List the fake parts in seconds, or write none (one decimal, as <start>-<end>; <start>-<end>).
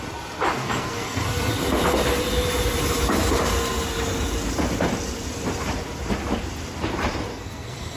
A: 0.6-1.5; 7.3-8.0